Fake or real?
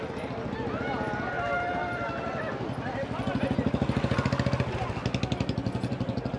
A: real